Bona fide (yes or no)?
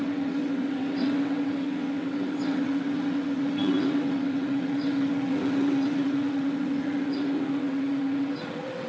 no